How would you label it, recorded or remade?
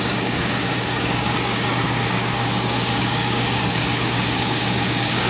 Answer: remade